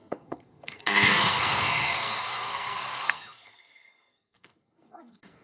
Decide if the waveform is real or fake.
fake